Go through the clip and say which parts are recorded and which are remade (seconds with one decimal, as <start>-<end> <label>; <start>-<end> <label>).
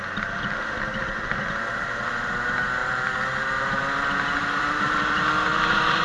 0.0-2.8 recorded; 2.8-3.8 remade; 3.8-4.4 recorded; 4.4-5.2 remade; 5.2-6.0 recorded